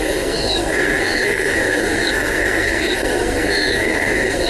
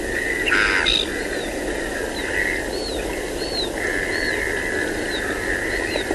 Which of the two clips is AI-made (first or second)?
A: first